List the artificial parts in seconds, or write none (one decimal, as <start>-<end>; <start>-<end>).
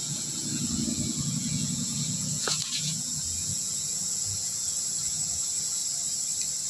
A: 0.0-5.8